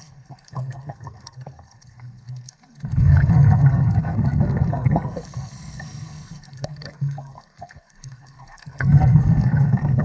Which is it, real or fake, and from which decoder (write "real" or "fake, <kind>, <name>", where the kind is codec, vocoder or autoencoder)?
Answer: fake, codec, SNAC